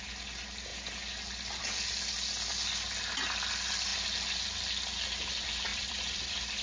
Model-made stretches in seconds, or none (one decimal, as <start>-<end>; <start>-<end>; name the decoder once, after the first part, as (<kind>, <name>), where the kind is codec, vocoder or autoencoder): 5.7-6.6 (vocoder, BigVGAN v2)